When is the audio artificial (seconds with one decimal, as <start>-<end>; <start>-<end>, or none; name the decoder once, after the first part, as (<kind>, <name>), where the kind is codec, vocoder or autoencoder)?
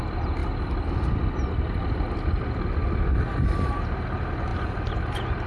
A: 0.0-0.4 (vocoder, BigVGAN v2); 3.7-5.5